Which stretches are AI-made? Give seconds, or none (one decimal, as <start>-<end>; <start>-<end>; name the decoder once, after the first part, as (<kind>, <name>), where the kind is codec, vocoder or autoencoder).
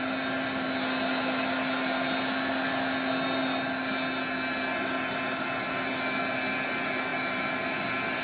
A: none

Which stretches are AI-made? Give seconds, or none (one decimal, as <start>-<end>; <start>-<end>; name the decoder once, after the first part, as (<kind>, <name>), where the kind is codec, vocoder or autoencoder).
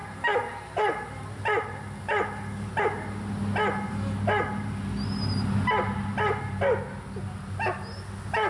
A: none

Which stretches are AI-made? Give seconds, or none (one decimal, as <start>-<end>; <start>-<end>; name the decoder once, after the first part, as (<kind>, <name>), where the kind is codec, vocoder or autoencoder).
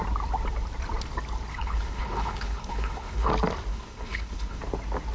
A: 1.5-3.3 (codec, HILCodec); 3.7-4.6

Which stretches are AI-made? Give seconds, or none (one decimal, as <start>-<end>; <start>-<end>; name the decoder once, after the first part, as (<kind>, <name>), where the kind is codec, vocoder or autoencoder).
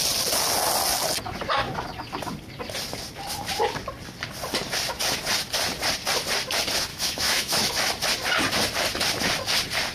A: 6.9-7.7 (autoencoder, DAC-VAE)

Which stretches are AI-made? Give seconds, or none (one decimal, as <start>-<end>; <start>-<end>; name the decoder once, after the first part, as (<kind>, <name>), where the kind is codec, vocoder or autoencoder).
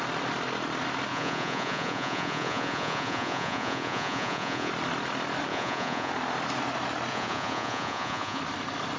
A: 1.1-4.7 (vocoder, Vocos); 5.5-6.1; 7.1-8.4